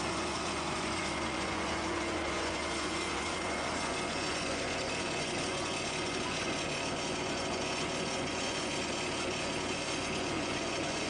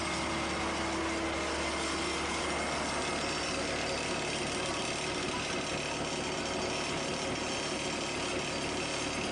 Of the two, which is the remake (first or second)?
first